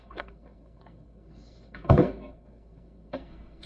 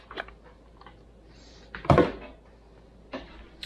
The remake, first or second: first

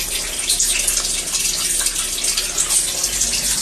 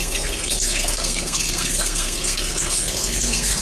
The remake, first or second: second